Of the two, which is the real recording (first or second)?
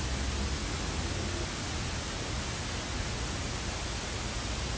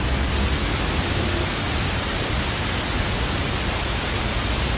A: first